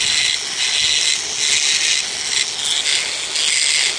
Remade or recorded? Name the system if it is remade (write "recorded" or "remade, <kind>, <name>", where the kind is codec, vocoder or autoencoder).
recorded